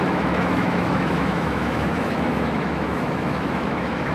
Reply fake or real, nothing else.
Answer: fake